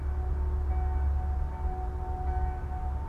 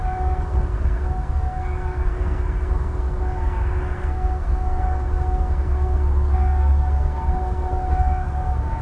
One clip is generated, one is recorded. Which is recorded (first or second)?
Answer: first